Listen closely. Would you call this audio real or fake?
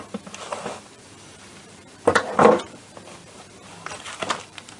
fake